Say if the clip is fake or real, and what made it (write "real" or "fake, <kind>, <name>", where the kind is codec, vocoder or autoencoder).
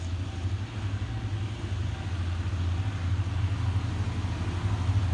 real